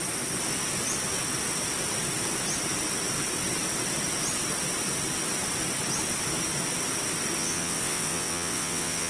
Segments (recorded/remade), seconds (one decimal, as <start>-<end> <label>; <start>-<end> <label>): 0.0-7.4 recorded; 7.4-9.1 remade